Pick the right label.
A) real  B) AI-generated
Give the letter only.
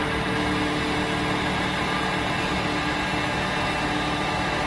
A